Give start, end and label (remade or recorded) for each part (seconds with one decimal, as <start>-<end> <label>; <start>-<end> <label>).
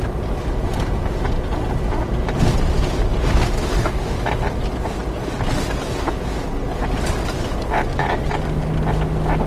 0.0-3.4 recorded; 3.4-4.4 remade; 4.4-7.5 recorded; 7.5-8.7 remade; 8.7-9.5 recorded